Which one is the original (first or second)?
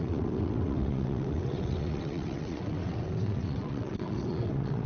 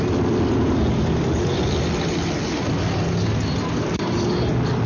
second